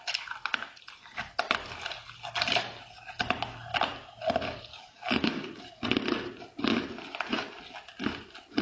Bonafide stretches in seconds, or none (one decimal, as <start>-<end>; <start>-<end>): 0.0-4.7; 5.6-8.6